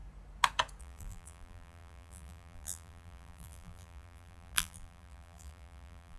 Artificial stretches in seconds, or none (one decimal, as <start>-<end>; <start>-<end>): 0.8-6.2